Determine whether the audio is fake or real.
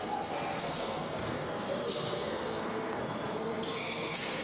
fake